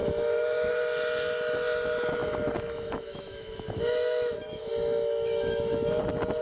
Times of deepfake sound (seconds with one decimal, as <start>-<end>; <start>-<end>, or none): 0.0-0.7; 2.2-6.0